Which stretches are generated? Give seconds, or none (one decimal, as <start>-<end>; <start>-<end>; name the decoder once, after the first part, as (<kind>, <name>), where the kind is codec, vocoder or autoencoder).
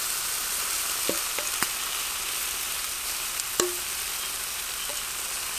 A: none